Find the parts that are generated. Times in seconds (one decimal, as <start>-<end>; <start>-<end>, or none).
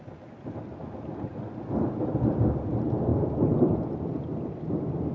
3.1-3.8